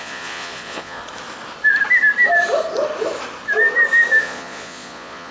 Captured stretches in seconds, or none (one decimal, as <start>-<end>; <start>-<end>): 1.0-4.2